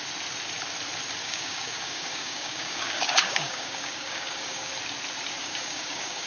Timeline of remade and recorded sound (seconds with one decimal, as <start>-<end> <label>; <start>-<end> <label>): 0.0-1.2 recorded; 1.2-4.7 remade; 4.7-5.4 recorded; 5.4-6.3 remade